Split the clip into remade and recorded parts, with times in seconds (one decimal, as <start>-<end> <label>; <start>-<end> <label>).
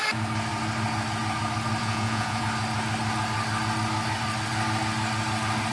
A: 0.0-1.8 recorded; 1.8-2.4 remade; 2.4-5.7 recorded